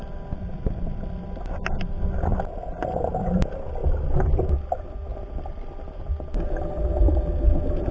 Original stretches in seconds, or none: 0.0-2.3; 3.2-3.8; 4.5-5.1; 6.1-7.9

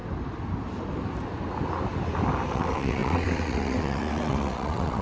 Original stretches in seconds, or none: 0.0-2.5